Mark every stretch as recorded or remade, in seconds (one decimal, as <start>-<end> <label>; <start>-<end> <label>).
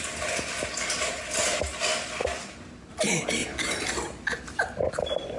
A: 0.0-2.2 remade; 2.2-2.9 recorded; 2.9-3.4 remade; 3.4-4.6 recorded; 4.6-5.4 remade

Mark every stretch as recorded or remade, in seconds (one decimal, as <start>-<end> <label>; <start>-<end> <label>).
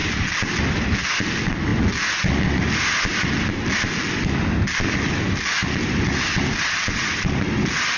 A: 0.0-8.0 recorded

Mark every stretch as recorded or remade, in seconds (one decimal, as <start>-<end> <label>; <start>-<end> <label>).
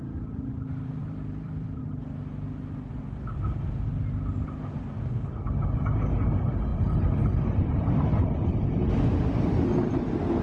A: 0.0-1.0 recorded; 1.0-1.8 remade; 1.8-10.4 recorded